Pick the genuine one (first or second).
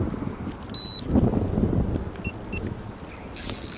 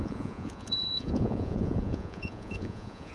first